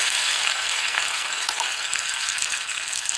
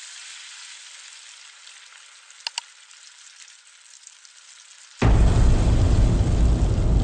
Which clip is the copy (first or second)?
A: first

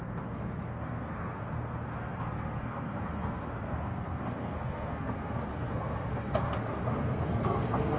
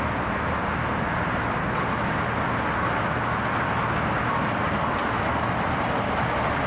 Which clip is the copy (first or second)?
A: first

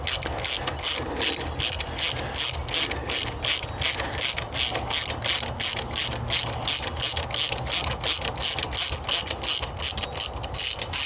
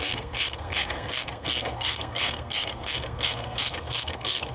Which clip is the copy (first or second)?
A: second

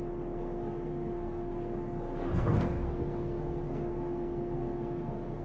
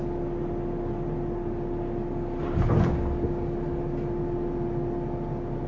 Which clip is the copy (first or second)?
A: first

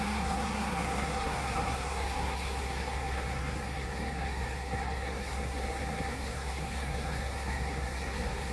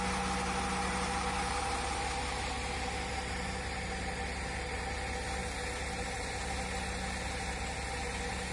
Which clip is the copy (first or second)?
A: first